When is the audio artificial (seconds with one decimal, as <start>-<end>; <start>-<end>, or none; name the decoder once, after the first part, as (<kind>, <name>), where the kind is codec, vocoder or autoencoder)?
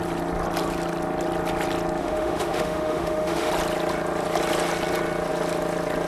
2.0-3.5 (autoencoder, DAC-VAE)